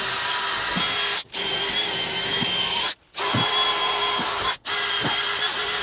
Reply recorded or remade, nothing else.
recorded